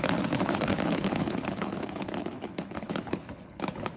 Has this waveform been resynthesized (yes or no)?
yes